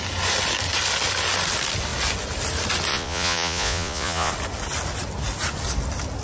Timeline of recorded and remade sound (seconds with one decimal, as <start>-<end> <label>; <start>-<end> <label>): 0.0-2.9 recorded; 2.9-4.3 remade; 4.3-6.2 recorded